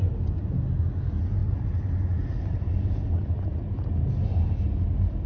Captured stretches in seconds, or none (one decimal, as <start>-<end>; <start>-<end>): 0.0-5.3